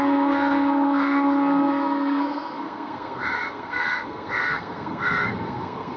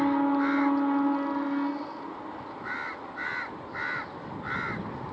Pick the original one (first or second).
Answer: second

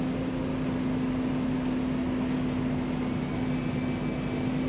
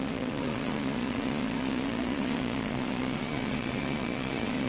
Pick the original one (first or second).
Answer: first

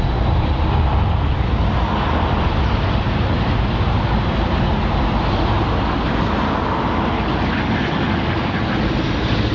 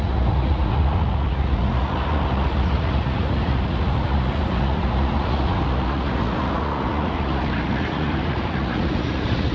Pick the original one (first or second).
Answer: first